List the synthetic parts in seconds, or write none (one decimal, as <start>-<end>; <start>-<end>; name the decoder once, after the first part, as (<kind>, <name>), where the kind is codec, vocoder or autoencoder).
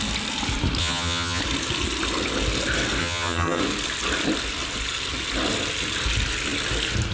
0.8-1.4 (vocoder, HiFi-GAN); 3.0-3.6